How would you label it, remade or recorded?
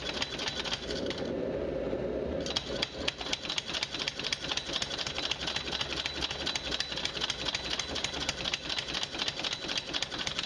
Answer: recorded